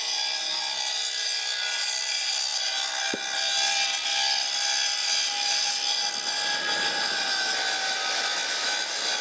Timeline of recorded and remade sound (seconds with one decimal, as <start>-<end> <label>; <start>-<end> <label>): 0.0-9.2 recorded